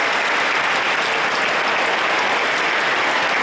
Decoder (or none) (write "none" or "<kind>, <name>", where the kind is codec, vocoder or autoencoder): none